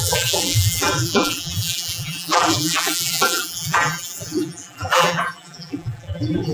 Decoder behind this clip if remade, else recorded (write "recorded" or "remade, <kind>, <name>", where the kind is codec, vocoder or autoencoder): remade, vocoder, BigVGAN v2